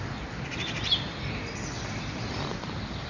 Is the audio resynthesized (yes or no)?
no